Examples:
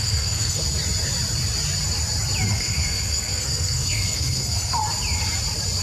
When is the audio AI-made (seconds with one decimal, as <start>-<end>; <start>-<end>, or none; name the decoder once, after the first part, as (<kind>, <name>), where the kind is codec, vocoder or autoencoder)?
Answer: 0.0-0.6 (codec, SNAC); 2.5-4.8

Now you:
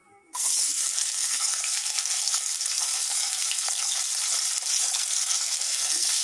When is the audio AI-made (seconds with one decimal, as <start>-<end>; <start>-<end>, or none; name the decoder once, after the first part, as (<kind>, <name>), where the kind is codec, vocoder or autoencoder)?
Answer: 0.0-4.1 (codec, SNAC); 4.7-6.2

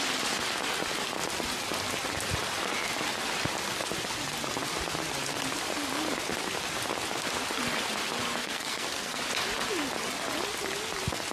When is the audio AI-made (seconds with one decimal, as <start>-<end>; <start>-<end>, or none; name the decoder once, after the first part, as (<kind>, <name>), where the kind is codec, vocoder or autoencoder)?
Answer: 8.4-9.2 (codec, SNAC)